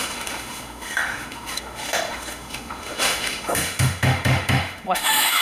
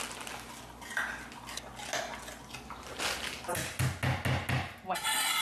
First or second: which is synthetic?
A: first